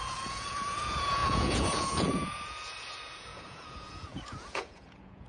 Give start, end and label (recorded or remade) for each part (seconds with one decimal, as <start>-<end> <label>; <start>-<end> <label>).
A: 0.0-5.3 remade